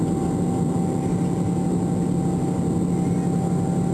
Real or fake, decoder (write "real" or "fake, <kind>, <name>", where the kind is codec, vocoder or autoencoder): real